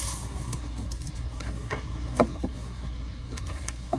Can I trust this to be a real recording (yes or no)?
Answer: no